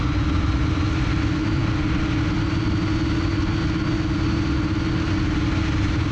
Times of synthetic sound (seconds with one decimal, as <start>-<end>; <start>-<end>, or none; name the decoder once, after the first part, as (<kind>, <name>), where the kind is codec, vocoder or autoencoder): none